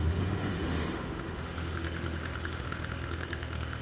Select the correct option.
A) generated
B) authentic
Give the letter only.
A